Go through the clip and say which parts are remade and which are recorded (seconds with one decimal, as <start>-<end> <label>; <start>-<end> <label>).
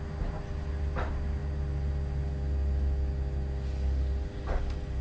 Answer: 0.0-5.0 recorded